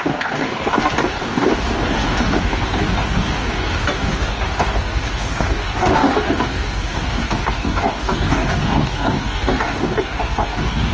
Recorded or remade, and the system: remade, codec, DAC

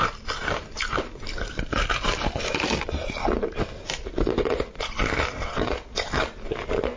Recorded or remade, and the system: recorded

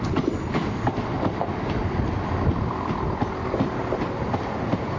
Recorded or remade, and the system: recorded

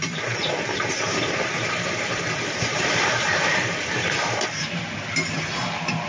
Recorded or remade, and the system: remade, vocoder, BigVGAN v2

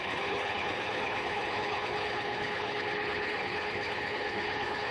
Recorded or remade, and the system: remade, codec, HILCodec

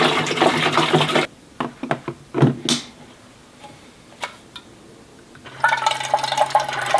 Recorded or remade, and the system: recorded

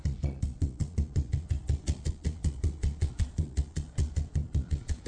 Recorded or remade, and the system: remade, vocoder, Vocos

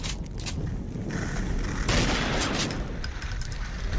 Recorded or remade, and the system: recorded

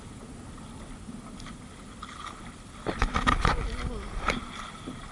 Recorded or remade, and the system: recorded